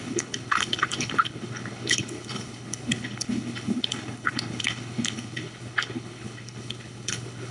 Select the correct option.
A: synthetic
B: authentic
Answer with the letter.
A